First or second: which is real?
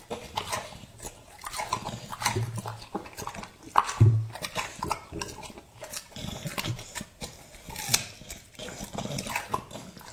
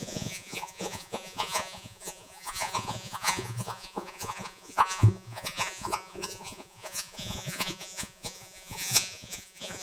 first